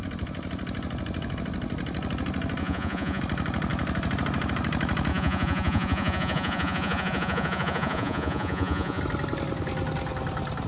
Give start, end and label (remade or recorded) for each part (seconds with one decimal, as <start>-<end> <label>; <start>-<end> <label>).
0.0-2.6 recorded; 2.6-3.2 remade; 3.2-5.1 recorded; 5.1-9.0 remade; 9.0-10.7 recorded